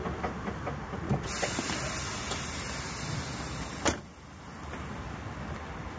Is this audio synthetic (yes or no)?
no